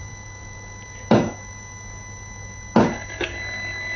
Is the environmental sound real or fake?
real